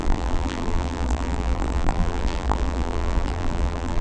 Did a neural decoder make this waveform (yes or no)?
yes